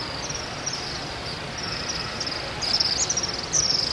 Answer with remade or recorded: recorded